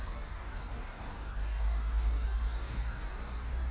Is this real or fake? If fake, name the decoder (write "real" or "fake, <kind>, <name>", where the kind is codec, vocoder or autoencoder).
fake, codec, DAC